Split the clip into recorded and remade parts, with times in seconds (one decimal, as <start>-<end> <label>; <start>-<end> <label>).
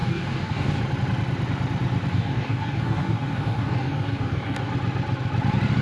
0.0-0.8 remade; 0.8-2.1 recorded; 2.1-4.7 remade; 4.7-5.8 recorded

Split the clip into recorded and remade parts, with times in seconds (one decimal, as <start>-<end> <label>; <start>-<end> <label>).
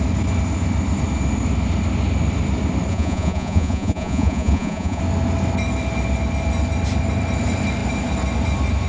0.0-2.9 recorded; 2.9-5.0 remade; 5.0-8.9 recorded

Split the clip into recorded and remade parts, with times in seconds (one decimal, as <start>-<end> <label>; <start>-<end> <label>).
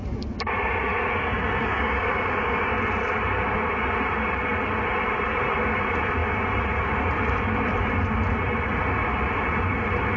0.0-1.6 recorded; 1.6-2.7 remade; 2.7-10.2 recorded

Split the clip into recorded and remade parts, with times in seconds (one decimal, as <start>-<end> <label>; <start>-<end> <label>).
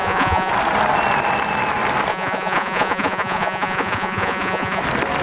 0.0-0.5 remade; 0.5-2.1 recorded; 2.1-4.8 remade; 4.8-5.2 recorded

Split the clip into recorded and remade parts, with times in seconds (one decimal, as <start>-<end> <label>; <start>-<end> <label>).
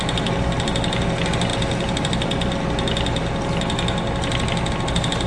0.0-5.3 recorded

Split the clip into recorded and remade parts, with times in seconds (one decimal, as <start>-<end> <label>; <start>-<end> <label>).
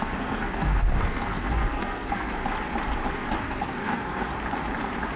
0.0-2.4 remade; 2.4-3.1 recorded; 3.1-4.3 remade; 4.3-5.2 recorded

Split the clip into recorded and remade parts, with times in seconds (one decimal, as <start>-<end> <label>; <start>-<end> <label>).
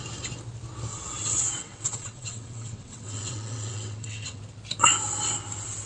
0.0-0.9 recorded; 0.9-4.4 remade; 4.4-5.9 recorded